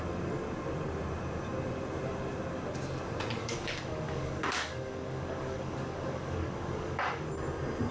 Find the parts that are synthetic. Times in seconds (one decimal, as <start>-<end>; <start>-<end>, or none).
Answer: 3.4-7.3